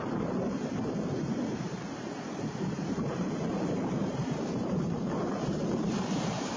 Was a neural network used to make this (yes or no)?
yes